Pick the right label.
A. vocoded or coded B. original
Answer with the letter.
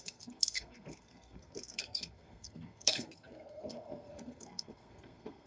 A